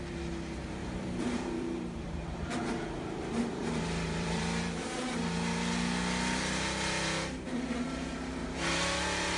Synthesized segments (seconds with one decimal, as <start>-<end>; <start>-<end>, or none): 0.8-4.8